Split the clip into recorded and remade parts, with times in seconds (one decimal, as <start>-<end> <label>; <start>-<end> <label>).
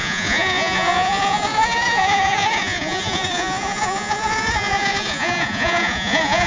0.0-6.5 remade